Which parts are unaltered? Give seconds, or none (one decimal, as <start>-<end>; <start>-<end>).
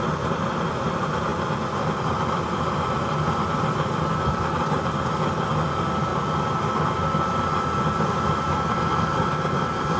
0.0-10.0